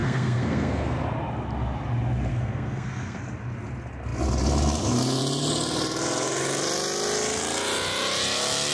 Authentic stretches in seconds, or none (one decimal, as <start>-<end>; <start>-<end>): 1.0-2.3; 3.2-8.7